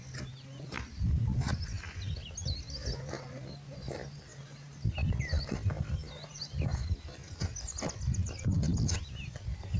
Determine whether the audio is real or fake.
real